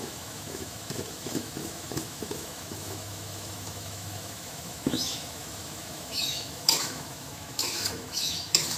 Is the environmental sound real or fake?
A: fake